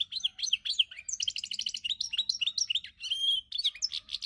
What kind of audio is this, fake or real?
real